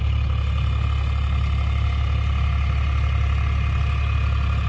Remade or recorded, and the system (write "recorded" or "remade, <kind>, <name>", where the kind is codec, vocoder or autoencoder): recorded